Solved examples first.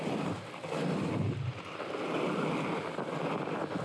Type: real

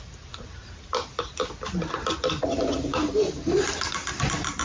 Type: real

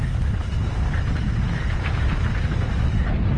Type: real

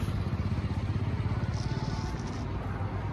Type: real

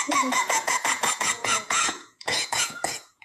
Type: fake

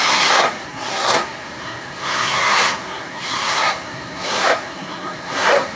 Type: fake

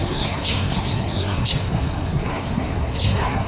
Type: fake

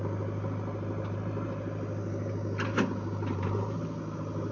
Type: real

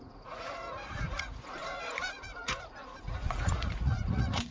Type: fake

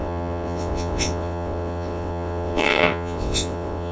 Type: fake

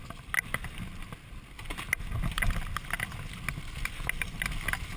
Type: real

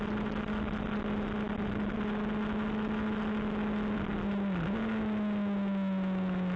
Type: real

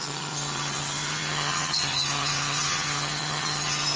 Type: fake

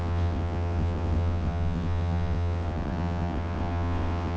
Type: fake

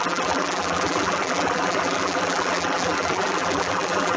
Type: fake